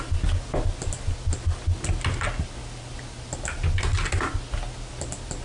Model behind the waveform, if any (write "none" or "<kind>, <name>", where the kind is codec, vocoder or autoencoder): none